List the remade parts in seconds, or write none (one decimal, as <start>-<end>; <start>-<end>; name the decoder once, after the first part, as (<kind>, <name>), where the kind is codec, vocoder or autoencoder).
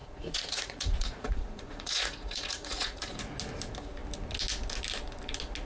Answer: 0.0-3.2 (vocoder, Vocos)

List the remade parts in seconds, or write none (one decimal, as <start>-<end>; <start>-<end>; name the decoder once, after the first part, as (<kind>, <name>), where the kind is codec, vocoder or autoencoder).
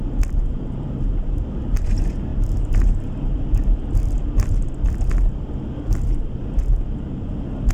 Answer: none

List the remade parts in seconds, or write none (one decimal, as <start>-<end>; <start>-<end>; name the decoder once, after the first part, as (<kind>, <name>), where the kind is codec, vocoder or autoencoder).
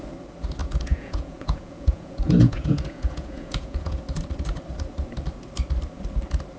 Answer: 0.6-4.0 (vocoder, Vocos)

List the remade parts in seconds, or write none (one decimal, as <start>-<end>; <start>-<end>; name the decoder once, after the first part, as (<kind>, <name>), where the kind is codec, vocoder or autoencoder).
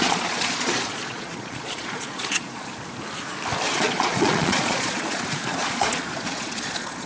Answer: 0.0-2.7 (vocoder, Vocos); 3.7-7.1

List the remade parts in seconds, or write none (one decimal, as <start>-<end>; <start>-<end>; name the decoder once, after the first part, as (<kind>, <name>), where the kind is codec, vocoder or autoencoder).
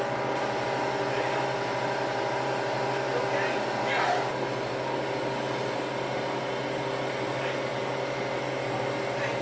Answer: none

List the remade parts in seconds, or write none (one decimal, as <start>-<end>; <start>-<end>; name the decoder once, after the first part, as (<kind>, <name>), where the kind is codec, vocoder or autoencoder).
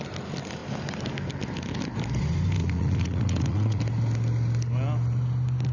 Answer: 2.6-3.8 (vocoder, Vocos)